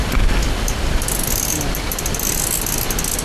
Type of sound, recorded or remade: recorded